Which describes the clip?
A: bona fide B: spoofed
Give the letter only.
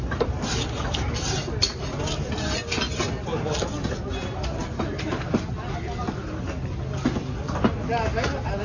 A